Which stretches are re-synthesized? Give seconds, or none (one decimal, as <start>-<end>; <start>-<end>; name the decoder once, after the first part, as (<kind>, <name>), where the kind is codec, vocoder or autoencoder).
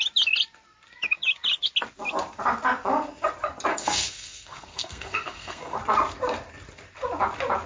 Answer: 3.7-5.8 (codec, SNAC)